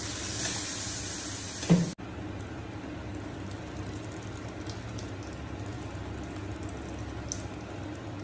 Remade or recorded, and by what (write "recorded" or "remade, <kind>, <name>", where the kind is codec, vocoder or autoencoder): recorded